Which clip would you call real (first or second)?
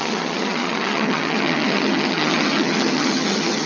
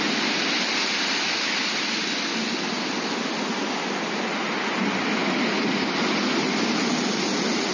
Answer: second